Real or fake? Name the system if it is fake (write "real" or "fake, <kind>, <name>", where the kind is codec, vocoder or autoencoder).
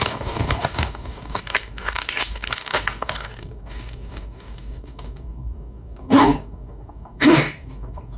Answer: fake, codec, DAC